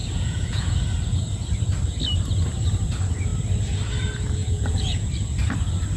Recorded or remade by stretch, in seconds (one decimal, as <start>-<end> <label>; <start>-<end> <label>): 0.0-0.7 remade; 0.7-4.4 recorded; 4.4-5.1 remade; 5.1-6.0 recorded